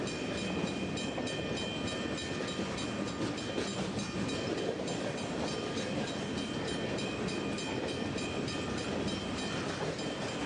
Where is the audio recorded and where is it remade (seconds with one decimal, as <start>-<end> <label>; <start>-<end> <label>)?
0.0-10.5 recorded